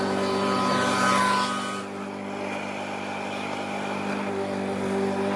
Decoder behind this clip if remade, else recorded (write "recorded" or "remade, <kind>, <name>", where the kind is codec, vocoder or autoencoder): recorded